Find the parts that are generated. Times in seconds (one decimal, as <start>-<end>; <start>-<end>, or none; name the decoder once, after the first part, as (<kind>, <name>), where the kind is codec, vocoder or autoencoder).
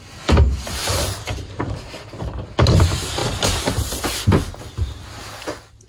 0.8-1.8 (vocoder, BigVGAN v2); 3.2-4.0